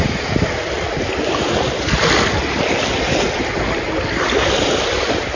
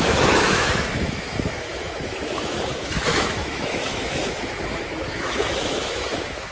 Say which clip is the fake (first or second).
second